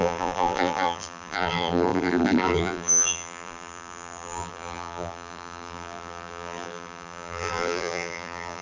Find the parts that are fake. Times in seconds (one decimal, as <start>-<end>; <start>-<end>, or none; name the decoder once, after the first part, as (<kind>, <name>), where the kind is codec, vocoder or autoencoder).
0.0-8.6 (vocoder, BigVGAN v2)